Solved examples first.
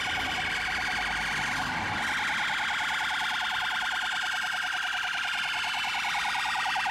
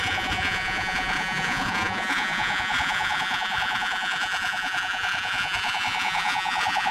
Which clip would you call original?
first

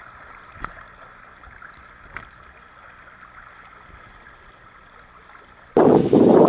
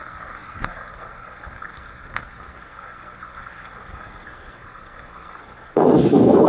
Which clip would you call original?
first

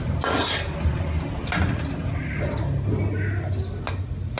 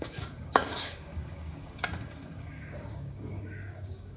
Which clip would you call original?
first